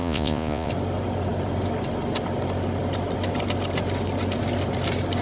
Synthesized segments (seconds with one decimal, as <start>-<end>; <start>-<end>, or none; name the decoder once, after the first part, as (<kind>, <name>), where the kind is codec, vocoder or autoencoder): 0.0-0.7 (vocoder, Vocos)